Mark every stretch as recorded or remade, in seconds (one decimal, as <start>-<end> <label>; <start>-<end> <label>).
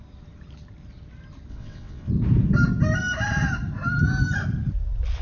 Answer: 0.0-1.5 recorded; 1.5-2.1 remade; 2.1-5.2 recorded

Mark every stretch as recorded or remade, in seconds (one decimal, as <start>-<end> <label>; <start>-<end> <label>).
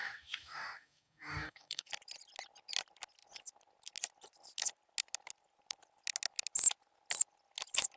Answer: 0.0-1.9 remade; 1.9-8.0 recorded